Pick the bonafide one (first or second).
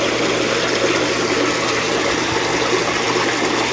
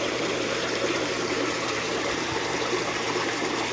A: first